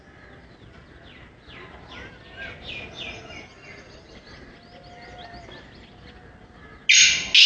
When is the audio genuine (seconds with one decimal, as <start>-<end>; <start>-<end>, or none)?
0.0-7.5